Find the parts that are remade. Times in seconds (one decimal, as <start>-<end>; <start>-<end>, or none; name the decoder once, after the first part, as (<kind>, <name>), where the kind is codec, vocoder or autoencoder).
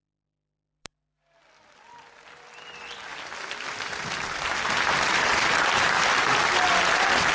3.1-5.5 (vocoder, BigVGAN v2)